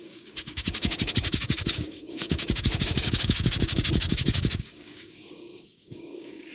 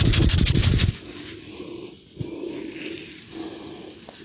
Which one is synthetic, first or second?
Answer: first